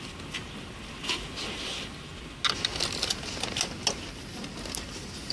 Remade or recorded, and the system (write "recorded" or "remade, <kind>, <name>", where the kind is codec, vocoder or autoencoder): recorded